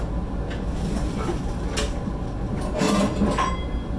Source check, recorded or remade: recorded